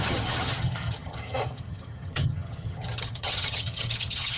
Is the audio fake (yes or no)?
yes